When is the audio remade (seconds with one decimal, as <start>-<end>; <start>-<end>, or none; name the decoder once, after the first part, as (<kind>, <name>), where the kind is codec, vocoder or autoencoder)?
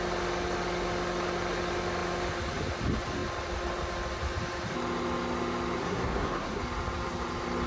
5.8-6.6 (codec, SNAC)